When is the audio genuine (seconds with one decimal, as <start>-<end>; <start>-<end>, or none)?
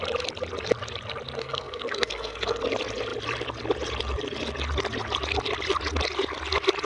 0.0-1.4; 2.6-6.8